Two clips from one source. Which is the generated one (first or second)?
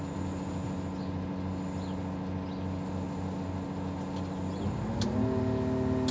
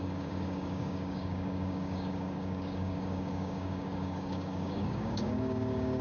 second